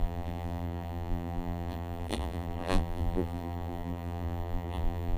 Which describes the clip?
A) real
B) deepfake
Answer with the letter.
B